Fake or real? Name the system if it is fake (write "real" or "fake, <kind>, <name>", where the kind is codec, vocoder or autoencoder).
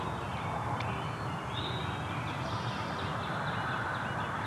real